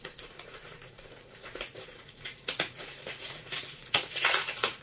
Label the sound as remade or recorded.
remade